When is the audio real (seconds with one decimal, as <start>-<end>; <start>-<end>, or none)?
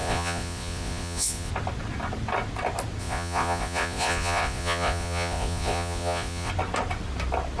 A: 1.5-3.0; 6.5-7.6